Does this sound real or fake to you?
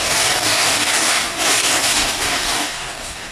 fake